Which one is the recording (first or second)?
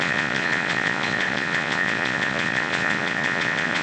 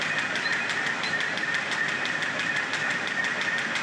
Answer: second